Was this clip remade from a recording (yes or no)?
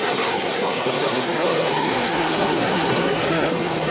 yes